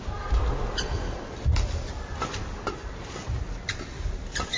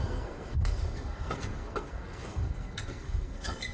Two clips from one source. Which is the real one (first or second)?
first